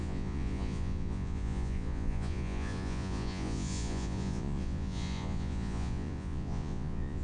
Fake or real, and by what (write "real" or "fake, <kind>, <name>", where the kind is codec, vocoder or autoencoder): fake, vocoder, Vocos